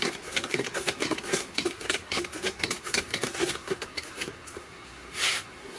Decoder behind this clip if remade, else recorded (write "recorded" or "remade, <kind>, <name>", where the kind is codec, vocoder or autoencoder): remade, codec, SNAC